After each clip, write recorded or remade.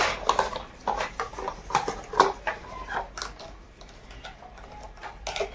recorded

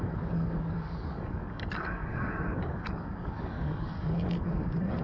remade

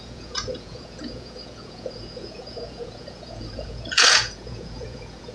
remade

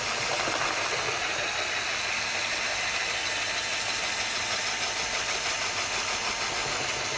recorded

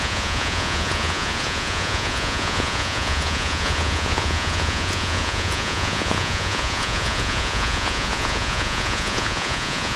remade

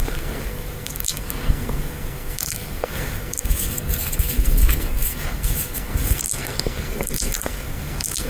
remade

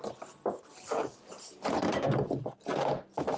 recorded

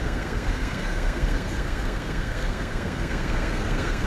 remade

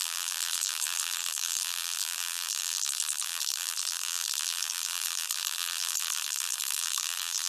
remade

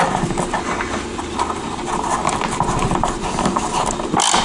recorded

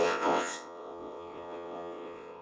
remade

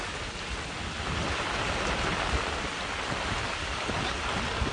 recorded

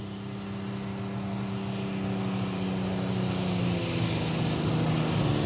recorded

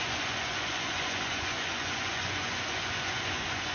remade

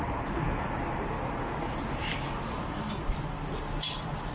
recorded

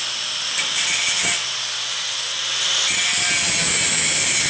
recorded